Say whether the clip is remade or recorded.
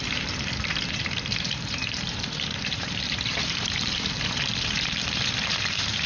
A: remade